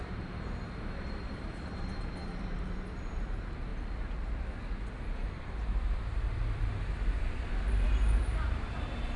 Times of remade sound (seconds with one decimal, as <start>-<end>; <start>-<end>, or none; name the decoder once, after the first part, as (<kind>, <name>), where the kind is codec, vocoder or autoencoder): 0.0-3.7 (vocoder, BigVGAN v2); 5.3-9.2

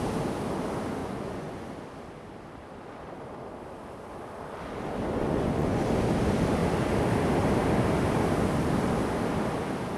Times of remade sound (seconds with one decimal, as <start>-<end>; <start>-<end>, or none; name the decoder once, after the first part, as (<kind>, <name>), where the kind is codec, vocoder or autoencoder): 1.0-1.7 (vocoder, Vocos); 5.2-5.8

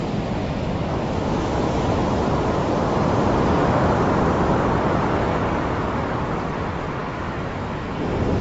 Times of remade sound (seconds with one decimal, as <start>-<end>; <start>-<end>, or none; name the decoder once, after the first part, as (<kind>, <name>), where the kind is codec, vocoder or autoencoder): 0.4-2.1 (autoencoder, DAC-VAE); 7.0-7.9

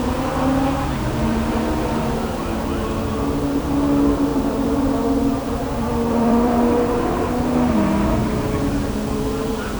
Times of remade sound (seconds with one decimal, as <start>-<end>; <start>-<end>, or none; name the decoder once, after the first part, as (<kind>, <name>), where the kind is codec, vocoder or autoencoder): 4.3-7.0 (vocoder, BigVGAN v2)

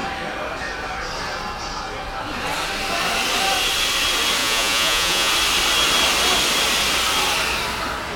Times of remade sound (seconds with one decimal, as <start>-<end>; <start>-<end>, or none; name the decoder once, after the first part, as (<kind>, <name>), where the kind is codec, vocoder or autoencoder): 4.4-5.3 (vocoder, Vocos)

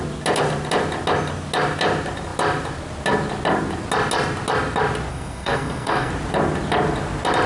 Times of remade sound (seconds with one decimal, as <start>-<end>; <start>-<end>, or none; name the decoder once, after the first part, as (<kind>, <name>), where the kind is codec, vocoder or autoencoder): 5.1-6.1 (codec, SNAC)

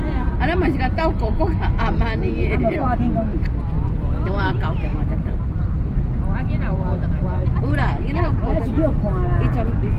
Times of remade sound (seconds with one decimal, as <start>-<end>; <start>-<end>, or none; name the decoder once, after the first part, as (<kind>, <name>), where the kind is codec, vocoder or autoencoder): 3.3-4.5 (vocoder, BigVGAN v2); 4.9-5.4